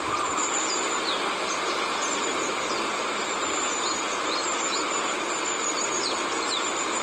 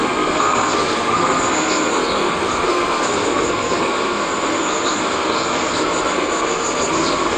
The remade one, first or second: second